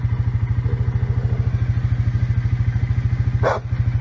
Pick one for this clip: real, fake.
real